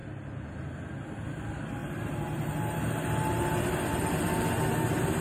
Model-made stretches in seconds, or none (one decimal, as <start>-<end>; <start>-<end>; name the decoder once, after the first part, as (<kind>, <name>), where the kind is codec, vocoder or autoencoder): none